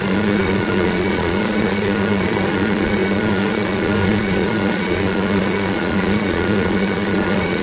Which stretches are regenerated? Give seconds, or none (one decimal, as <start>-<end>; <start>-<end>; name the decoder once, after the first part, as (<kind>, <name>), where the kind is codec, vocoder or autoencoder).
0.0-7.6 (vocoder, Vocos)